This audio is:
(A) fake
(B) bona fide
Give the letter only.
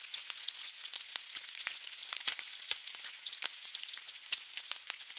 A